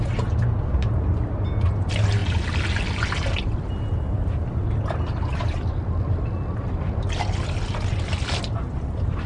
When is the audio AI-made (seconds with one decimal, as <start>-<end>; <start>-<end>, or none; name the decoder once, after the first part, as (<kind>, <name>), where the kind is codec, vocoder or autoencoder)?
none